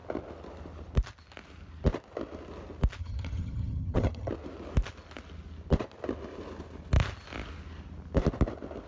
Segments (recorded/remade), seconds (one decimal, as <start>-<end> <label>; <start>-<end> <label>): 0.0-3.0 recorded; 3.0-4.3 remade; 4.3-8.9 recorded